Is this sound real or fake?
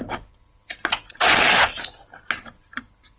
real